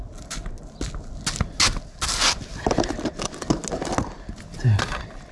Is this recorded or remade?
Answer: recorded